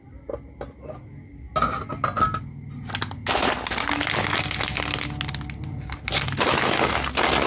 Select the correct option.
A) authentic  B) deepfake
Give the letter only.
A